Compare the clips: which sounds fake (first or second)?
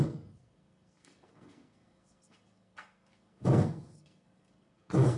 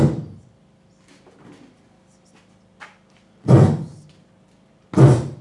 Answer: first